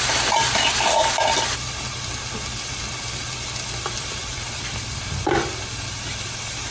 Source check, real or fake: fake